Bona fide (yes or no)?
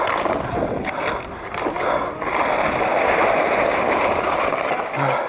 yes